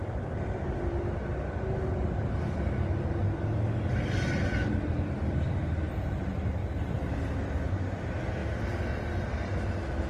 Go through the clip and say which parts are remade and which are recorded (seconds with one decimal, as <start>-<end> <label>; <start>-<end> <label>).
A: 0.0-10.1 recorded